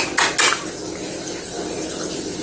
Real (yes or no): yes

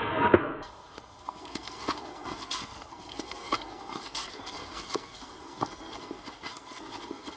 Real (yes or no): no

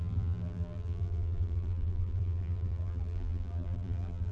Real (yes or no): no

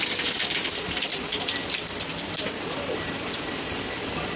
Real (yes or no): no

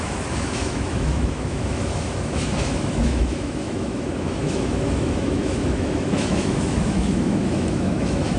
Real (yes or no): no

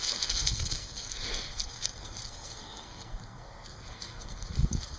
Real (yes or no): no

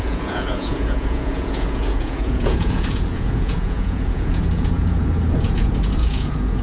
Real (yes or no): no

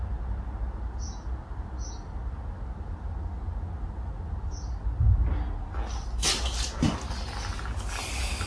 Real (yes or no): yes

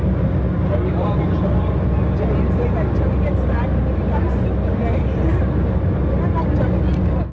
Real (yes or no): yes